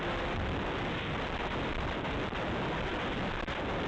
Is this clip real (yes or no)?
yes